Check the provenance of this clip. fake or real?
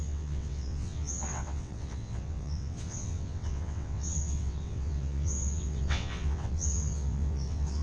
fake